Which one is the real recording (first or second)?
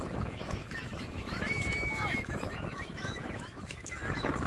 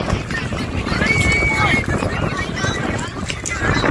second